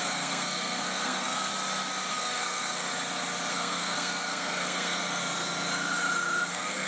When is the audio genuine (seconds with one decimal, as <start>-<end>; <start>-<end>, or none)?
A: 1.5-2.1; 2.9-3.5; 5.2-6.5